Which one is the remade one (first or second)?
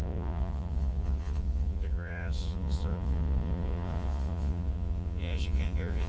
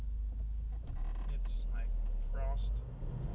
first